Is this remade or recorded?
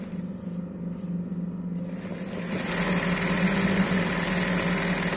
recorded